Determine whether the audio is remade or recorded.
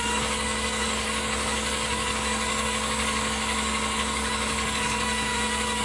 remade